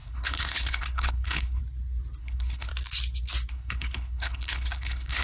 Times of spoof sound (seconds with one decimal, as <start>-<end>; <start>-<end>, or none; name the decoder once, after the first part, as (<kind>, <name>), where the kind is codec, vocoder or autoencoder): 0.0-1.6 (codec, HILCodec); 2.2-2.7; 3.5-5.2